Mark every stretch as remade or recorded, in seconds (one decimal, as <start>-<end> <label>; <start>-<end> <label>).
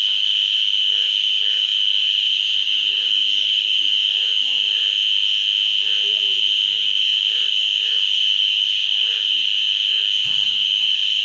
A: 0.0-4.8 remade; 4.8-6.4 recorded; 6.4-11.2 remade